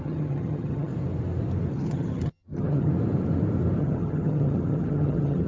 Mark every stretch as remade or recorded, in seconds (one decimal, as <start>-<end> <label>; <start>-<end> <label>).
0.0-0.9 remade; 0.9-1.7 recorded; 1.7-2.9 remade; 2.9-3.8 recorded; 3.8-5.5 remade